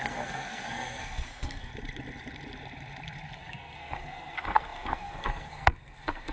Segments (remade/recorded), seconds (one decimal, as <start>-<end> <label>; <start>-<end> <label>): 0.0-1.7 remade; 1.7-3.4 recorded; 3.4-6.3 remade

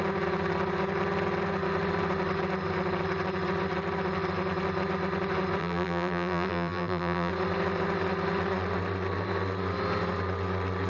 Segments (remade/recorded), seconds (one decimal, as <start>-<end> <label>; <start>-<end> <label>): 0.0-5.6 recorded; 5.6-7.3 remade; 7.3-10.9 recorded